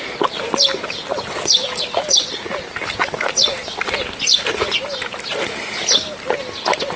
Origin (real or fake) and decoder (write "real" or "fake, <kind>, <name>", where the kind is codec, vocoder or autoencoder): real